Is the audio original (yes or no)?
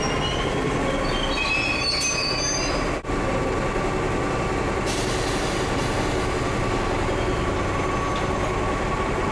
yes